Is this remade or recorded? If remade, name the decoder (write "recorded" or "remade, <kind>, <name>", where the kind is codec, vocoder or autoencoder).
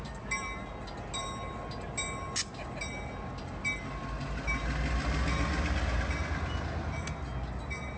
recorded